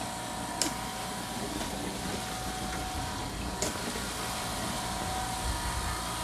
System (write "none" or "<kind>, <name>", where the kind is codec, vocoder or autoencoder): none